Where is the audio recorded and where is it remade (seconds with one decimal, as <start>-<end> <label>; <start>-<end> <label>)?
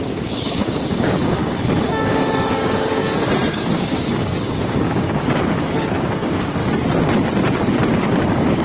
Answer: 0.0-3.0 remade; 3.0-3.5 recorded; 3.5-6.6 remade; 6.6-7.9 recorded; 7.9-8.6 remade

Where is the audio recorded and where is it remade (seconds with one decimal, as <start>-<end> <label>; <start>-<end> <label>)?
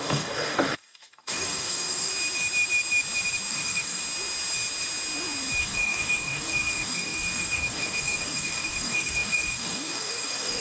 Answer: 0.0-2.1 remade; 2.1-3.5 recorded; 3.5-4.0 remade; 4.0-5.6 recorded; 5.6-10.6 remade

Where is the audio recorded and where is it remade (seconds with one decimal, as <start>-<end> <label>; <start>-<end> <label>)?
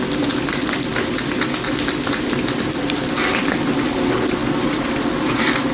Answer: 0.0-5.7 recorded